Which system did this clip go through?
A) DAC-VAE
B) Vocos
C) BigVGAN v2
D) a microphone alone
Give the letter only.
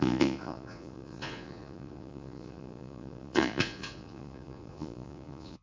B